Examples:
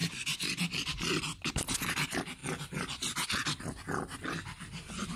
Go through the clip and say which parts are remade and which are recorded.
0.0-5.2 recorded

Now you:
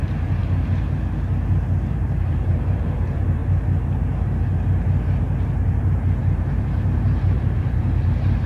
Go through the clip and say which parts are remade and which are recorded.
0.0-0.4 remade; 0.4-1.9 recorded; 1.9-3.4 remade; 3.4-5.7 recorded; 5.7-8.5 remade

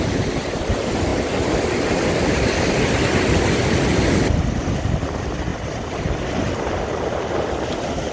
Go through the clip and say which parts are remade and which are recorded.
0.0-8.1 recorded

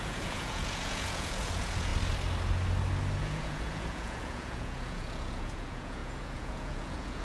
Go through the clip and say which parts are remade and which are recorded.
0.0-1.9 remade; 1.9-3.2 recorded; 3.2-7.2 remade

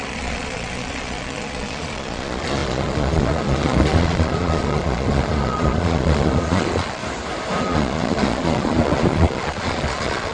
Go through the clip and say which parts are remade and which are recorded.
0.0-7.0 remade; 7.0-7.6 recorded; 7.6-10.3 remade

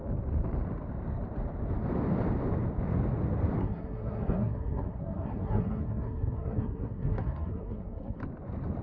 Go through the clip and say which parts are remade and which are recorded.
0.0-3.6 recorded; 3.6-8.2 remade; 8.2-8.8 recorded